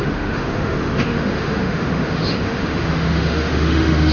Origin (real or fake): fake